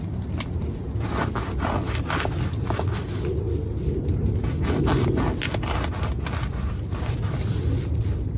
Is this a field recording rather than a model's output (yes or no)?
yes